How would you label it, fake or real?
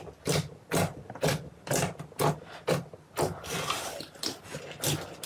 real